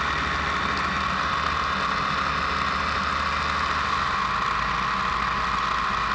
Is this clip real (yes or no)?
yes